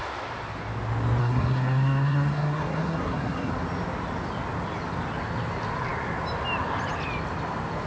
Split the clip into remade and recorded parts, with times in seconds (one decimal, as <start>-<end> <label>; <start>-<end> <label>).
0.0-1.2 recorded; 1.2-3.5 remade; 3.5-7.9 recorded